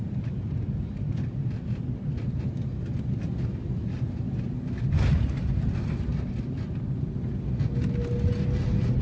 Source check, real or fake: real